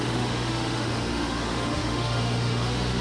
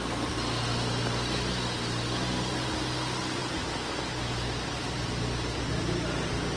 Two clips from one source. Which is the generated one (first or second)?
first